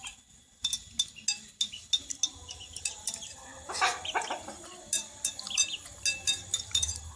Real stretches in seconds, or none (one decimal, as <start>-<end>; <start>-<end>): 0.0-3.9; 4.8-7.2